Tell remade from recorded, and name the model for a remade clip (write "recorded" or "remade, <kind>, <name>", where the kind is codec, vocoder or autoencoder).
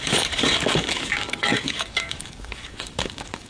remade, codec, DAC